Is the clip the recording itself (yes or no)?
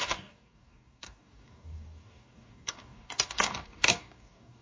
no